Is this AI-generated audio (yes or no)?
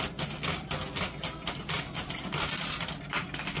no